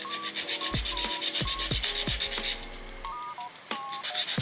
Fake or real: real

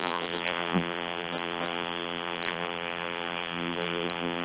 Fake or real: fake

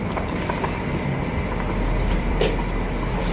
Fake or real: fake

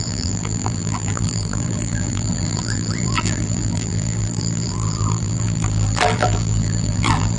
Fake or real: fake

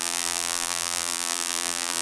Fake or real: fake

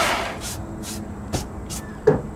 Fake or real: fake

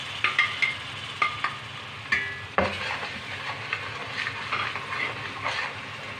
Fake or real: real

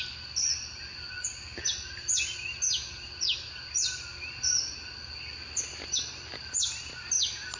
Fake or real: real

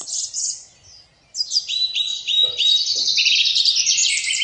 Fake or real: fake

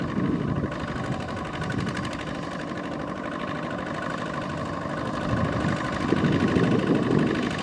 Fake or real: real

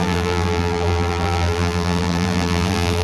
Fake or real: fake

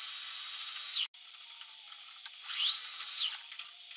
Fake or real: real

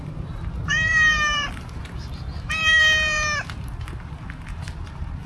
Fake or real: fake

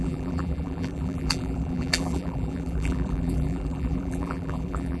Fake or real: fake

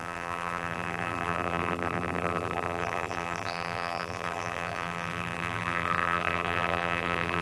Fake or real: fake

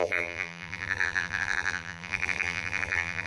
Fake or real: fake